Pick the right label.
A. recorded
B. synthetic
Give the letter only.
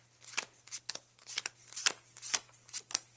A